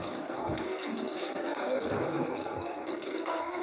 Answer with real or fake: fake